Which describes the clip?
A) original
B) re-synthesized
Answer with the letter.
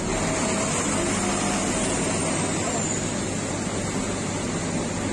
A